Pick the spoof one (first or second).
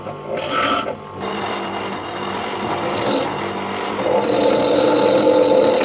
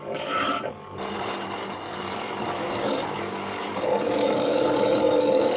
second